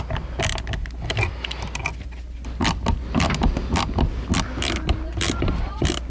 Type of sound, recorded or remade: recorded